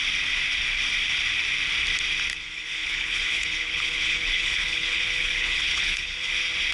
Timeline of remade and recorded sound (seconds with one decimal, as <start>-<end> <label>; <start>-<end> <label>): 0.0-2.3 recorded; 2.3-6.3 remade; 6.3-6.7 recorded

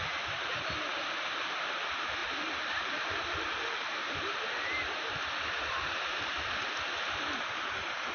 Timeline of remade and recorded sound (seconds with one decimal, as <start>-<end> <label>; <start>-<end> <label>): 0.0-8.1 remade